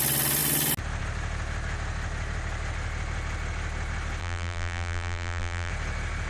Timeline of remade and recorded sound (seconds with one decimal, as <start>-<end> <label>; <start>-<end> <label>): 0.0-4.2 recorded; 4.2-5.7 remade; 5.7-6.3 recorded